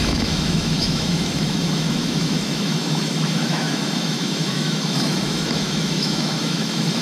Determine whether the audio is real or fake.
fake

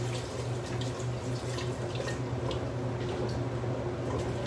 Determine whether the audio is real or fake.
real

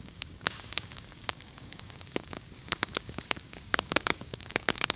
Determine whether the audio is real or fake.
fake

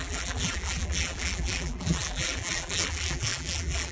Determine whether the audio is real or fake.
fake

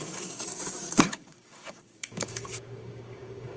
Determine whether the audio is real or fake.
fake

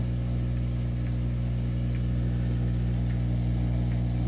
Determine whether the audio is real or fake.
real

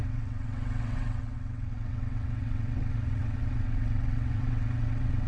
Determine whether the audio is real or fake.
fake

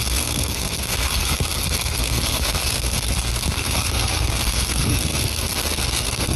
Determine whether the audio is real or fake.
fake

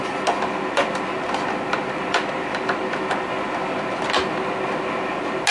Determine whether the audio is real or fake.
real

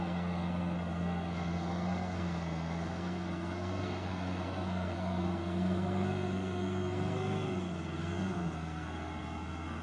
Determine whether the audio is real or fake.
fake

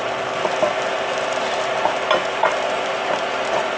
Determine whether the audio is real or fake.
real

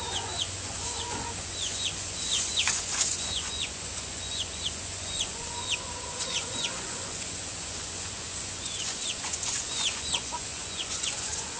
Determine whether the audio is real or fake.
fake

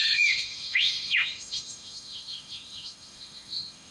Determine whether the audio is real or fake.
fake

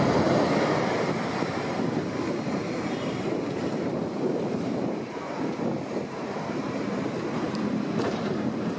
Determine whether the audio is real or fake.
fake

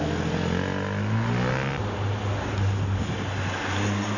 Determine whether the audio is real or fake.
real